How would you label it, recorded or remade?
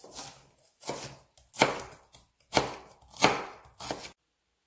recorded